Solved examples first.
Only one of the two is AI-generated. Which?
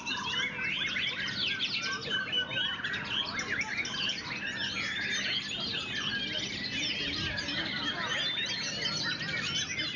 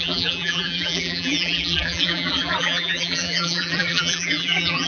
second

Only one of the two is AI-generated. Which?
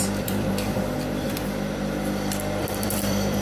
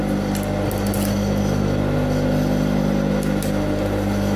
first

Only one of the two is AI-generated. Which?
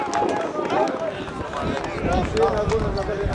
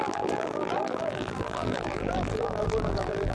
second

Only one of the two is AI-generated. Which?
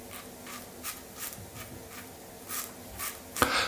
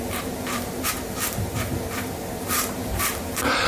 second